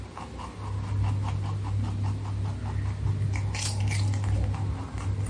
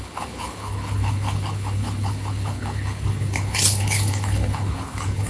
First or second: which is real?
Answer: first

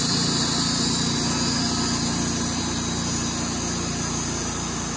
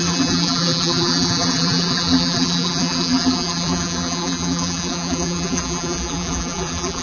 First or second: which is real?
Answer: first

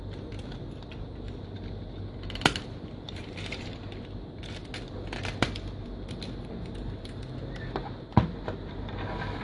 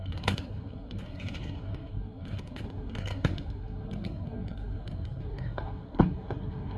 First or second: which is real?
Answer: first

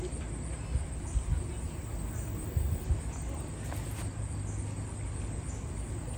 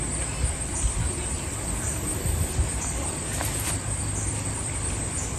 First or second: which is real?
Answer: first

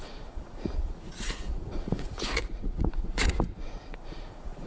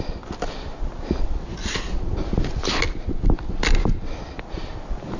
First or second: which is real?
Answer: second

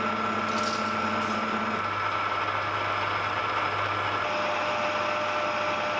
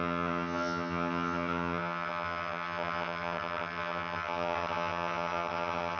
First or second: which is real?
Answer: first